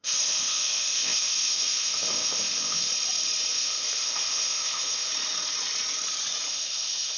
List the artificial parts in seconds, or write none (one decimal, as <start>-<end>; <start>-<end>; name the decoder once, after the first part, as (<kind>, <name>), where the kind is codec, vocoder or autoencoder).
0.0-2.9 (codec, ZipCodec); 3.5-5.1; 6.5-7.2